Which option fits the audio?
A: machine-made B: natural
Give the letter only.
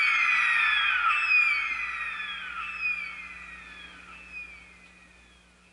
B